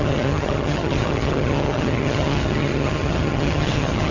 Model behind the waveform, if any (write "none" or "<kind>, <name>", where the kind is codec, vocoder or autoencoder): vocoder, HiFi-GAN